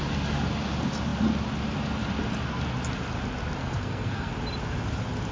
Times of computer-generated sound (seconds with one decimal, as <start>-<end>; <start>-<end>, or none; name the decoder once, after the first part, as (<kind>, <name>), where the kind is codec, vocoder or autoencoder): 3.6-4.3 (codec, SNAC)